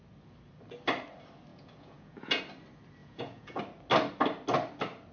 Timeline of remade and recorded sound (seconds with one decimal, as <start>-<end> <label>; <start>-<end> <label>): 0.0-1.5 recorded; 1.5-2.4 remade; 2.4-3.0 recorded; 3.0-3.6 remade; 3.6-5.1 recorded